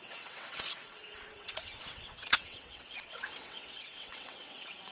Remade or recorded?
remade